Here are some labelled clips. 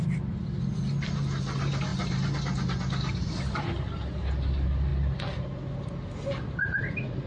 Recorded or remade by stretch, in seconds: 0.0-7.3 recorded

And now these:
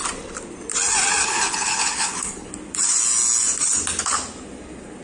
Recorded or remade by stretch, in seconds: 0.0-1.2 recorded; 1.2-2.5 remade; 2.5-5.0 recorded

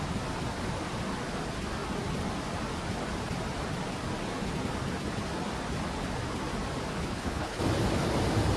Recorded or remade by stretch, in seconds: 0.0-7.0 recorded; 7.0-7.6 remade; 7.6-8.6 recorded